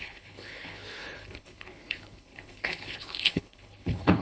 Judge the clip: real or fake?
fake